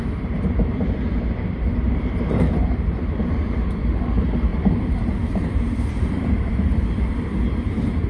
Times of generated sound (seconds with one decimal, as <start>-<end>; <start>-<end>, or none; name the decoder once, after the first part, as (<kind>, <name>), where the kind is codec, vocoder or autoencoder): 0.0-8.1 (vocoder, BigVGAN v2)